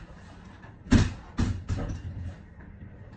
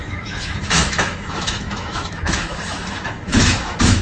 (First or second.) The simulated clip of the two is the second